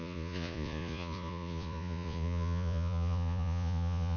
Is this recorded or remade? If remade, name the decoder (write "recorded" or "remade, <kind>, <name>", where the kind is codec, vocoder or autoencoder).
remade, vocoder, Vocos